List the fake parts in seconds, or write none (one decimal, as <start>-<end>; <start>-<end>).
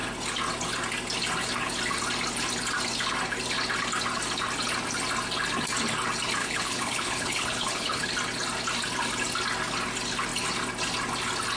6.4-8.0